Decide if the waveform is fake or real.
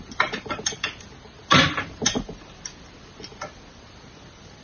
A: real